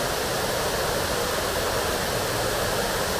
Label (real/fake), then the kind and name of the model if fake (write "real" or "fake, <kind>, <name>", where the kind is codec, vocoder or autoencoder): real